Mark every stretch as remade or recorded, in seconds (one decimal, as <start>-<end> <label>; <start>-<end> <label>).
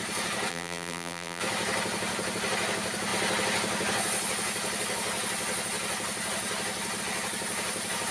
0.0-0.5 recorded; 0.5-1.4 remade; 1.4-8.1 recorded